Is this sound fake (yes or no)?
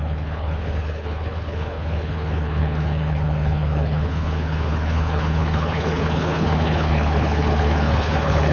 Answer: yes